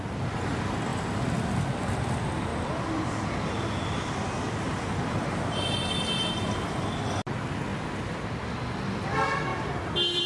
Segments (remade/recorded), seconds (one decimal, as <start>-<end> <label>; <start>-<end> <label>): 0.0-2.5 recorded; 2.5-4.1 remade; 4.1-9.5 recorded; 9.5-10.3 remade